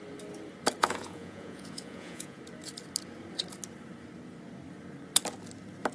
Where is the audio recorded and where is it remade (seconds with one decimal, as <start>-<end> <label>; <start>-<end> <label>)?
0.0-0.8 recorded; 0.8-2.4 remade; 2.4-5.9 recorded